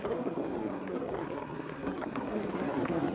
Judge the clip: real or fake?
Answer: fake